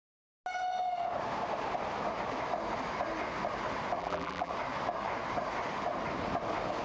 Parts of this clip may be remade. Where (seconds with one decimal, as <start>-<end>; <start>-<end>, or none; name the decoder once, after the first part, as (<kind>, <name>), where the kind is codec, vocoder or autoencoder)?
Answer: 4.0-4.5 (vocoder, BigVGAN v2)